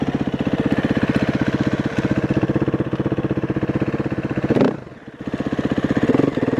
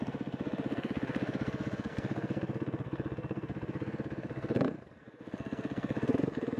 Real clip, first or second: first